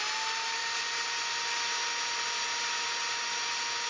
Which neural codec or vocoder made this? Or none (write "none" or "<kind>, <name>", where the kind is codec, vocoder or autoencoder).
none